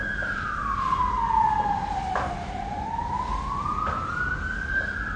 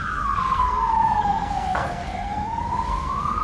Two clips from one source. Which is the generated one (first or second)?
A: second